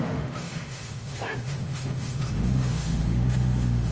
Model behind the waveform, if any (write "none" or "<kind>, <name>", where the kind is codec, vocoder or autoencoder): autoencoder, DAC-VAE